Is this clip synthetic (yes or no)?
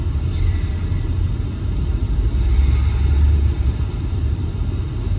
no